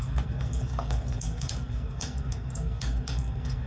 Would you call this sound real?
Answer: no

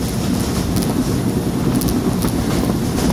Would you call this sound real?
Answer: yes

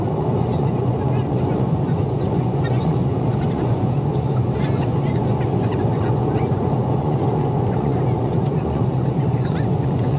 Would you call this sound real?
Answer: no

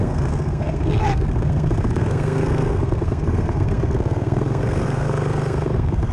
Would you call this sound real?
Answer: no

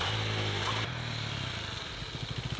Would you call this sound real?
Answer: yes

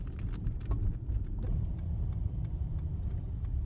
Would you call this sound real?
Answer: yes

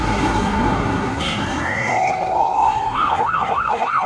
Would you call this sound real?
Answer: no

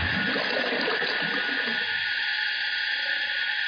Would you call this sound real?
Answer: yes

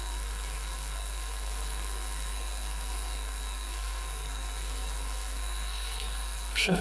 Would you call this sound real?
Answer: no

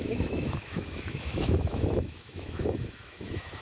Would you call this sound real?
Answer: no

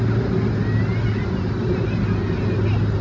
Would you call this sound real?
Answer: yes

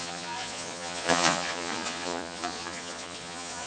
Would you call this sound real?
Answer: no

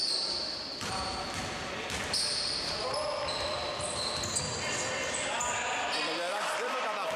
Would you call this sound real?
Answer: yes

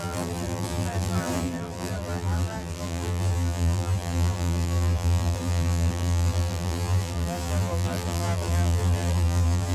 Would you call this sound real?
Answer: no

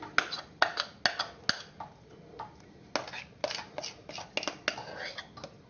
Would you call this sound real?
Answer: yes